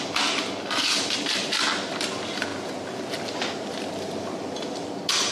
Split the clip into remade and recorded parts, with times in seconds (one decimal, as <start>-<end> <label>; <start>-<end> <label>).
0.0-5.3 recorded